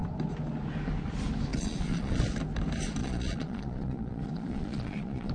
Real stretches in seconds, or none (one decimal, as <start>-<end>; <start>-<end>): 0.0-1.5; 2.2-3.0